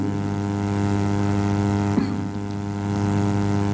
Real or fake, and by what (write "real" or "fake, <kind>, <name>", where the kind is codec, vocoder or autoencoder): real